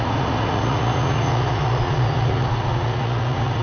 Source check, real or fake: fake